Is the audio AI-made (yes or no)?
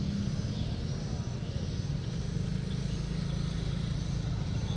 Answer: no